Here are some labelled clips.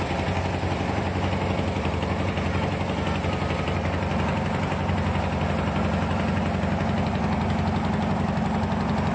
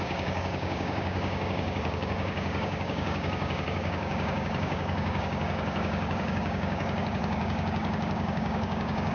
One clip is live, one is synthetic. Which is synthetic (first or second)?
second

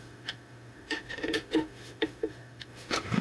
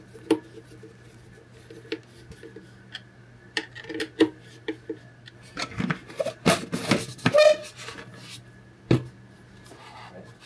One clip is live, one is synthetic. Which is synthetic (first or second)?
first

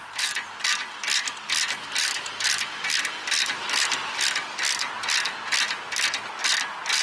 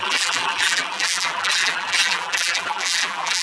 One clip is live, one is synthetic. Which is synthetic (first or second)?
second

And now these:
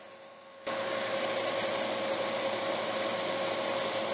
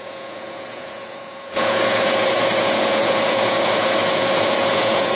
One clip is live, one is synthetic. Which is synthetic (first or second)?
second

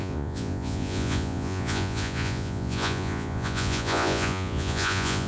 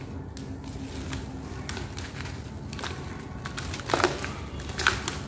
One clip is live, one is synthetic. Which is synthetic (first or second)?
first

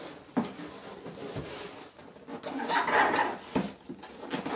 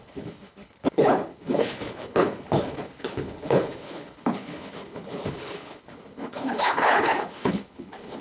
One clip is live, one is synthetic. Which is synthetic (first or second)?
second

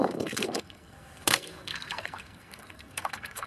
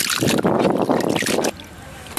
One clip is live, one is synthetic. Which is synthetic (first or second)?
first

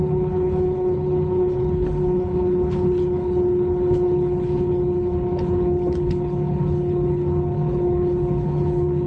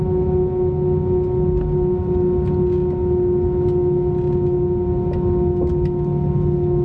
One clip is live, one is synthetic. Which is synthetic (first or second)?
first